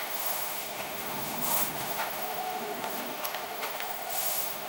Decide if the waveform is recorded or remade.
remade